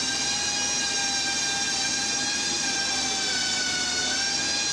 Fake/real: real